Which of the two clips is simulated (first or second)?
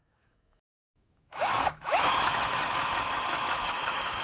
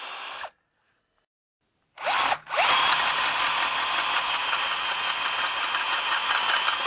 first